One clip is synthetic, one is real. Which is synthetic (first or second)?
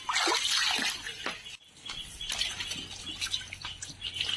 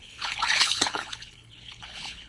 second